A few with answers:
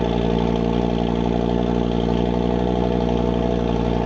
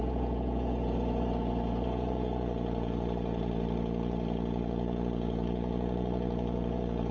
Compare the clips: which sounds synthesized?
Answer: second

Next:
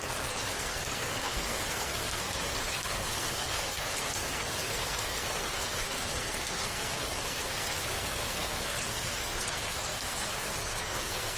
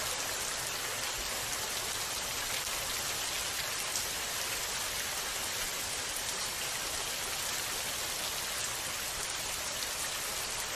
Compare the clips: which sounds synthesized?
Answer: first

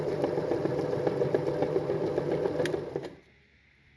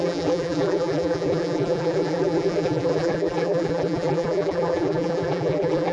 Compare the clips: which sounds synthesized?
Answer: second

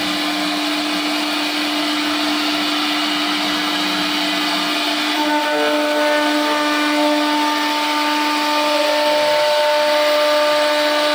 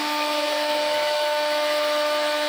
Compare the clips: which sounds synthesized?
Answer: second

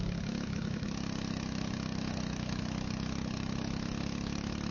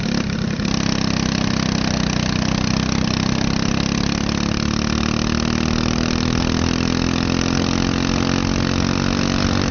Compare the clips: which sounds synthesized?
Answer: first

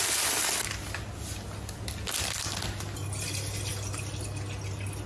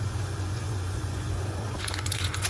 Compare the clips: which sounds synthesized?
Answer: second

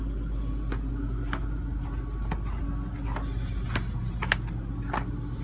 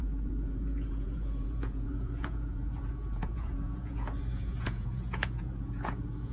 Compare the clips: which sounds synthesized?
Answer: second